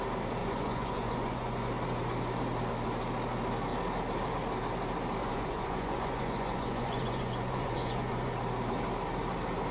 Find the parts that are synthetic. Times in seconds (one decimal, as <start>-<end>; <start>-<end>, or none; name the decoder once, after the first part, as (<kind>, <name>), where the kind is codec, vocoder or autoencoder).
0.4-1.7 (vocoder, Vocos); 5.2-8.3